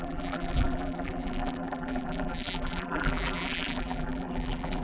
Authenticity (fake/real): fake